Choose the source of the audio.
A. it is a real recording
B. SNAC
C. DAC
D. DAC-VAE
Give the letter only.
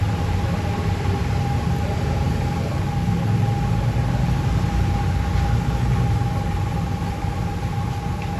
A